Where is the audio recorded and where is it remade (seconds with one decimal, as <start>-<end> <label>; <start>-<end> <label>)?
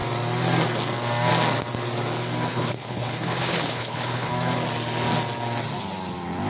0.0-2.5 recorded; 2.5-4.3 remade; 4.3-6.5 recorded